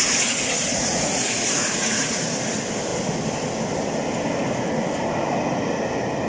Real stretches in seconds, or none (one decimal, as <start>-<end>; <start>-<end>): 0.0-0.7; 2.2-6.3